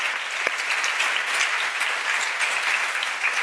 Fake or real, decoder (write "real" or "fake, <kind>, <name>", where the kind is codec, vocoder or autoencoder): real